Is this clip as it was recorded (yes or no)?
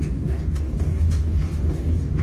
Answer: no